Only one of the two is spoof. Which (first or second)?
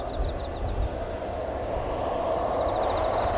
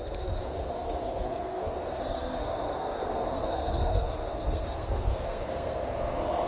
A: second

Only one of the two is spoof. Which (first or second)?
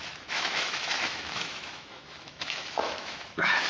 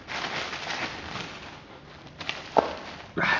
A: first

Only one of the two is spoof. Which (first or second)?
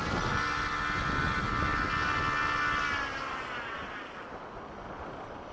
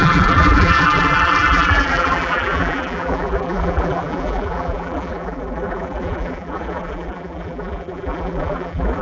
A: second